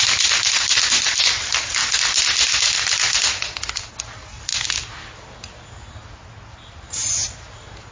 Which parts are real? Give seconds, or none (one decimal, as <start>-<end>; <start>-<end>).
0.0-7.9